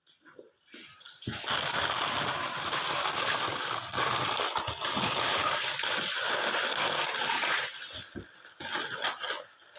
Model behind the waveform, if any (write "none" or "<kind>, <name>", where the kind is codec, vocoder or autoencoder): none